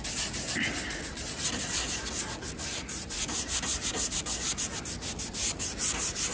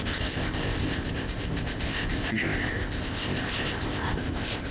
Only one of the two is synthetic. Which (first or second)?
second